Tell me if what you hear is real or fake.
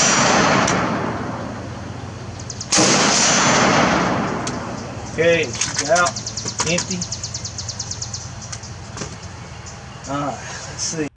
real